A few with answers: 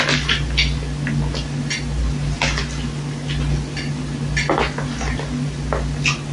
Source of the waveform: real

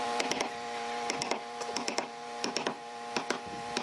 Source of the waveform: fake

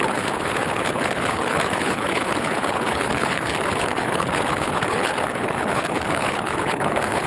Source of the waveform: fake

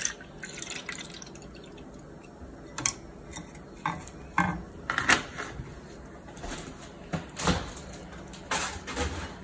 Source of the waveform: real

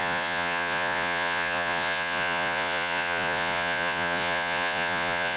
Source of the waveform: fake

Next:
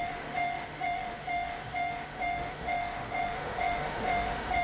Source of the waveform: fake